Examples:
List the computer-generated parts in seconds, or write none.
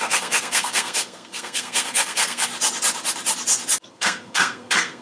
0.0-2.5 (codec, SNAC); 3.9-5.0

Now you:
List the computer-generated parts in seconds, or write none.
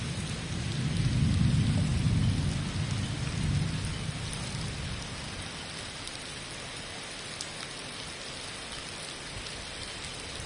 none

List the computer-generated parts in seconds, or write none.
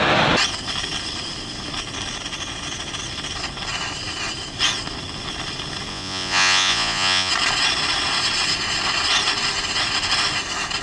5.9-7.3 (vocoder, Vocos)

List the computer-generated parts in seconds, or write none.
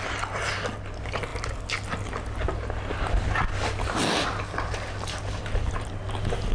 none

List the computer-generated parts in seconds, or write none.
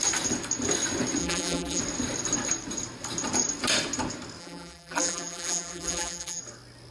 1.2-1.8 (vocoder, BigVGAN v2); 4.4-6.4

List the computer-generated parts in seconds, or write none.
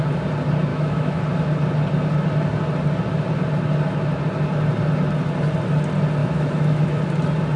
0.7-1.2 (autoencoder, DAC-VAE); 6.2-7.0